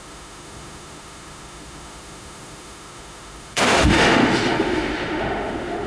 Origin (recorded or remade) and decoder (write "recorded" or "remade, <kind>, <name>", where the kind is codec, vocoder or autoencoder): remade, autoencoder, DAC-VAE